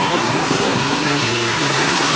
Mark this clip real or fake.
fake